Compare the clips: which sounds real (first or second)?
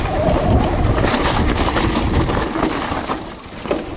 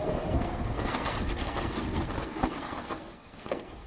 first